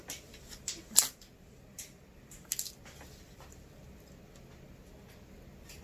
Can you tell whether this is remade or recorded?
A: recorded